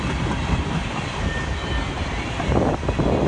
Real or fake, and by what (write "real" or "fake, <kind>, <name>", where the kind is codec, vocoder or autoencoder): real